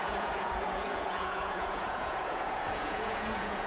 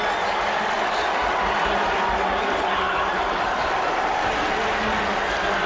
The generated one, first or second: first